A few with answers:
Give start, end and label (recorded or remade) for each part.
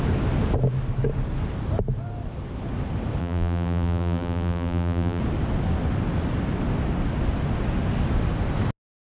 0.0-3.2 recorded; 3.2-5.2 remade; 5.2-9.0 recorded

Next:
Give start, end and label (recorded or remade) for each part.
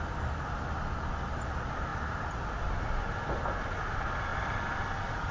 0.0-4.3 recorded; 4.3-5.3 remade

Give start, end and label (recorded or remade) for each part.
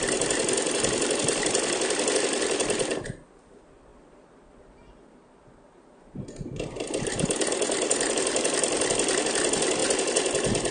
0.0-3.9 remade; 3.9-8.1 recorded; 8.1-9.8 remade; 9.8-10.7 recorded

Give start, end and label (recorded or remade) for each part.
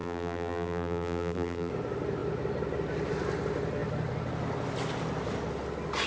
0.0-1.7 remade; 1.7-6.1 recorded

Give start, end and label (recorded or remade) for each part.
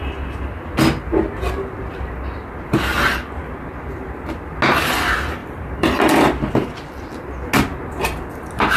0.0-5.4 recorded; 5.4-7.3 remade; 7.3-8.8 recorded